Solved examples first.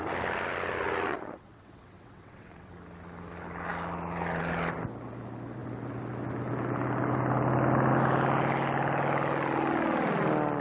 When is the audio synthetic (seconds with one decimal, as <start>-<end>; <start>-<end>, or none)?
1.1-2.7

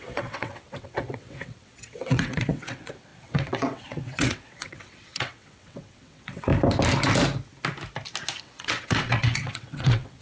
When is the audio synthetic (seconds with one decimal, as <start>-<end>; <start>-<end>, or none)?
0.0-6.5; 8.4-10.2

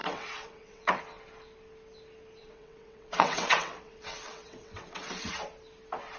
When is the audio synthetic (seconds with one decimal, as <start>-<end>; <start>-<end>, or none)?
0.0-1.0; 2.4-5.3

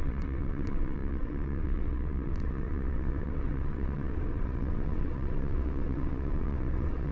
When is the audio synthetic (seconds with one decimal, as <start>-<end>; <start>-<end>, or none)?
0.0-7.1

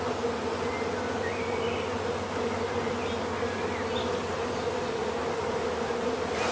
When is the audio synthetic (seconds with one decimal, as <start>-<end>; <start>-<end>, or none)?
none

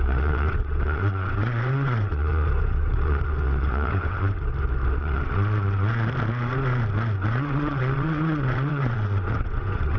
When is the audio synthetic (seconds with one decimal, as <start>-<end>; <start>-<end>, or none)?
0.0-4.5; 5.0-5.9; 7.3-10.0